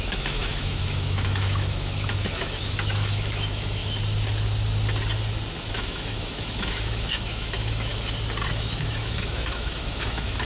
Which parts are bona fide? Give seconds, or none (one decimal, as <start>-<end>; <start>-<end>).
3.8-5.7; 7.9-8.5